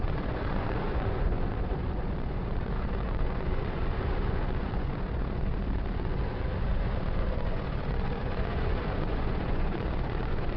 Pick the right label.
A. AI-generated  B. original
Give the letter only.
A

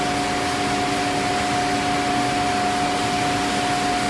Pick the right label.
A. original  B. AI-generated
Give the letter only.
A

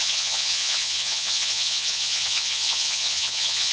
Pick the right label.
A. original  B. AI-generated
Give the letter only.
B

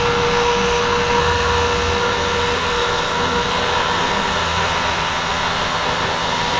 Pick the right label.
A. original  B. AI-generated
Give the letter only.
B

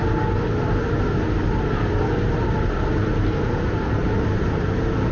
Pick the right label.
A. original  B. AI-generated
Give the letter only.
A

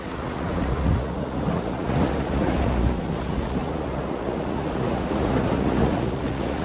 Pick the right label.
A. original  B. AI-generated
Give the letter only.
B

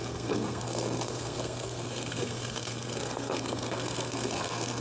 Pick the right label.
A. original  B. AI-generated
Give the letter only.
B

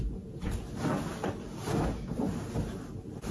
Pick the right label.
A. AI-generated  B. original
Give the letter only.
B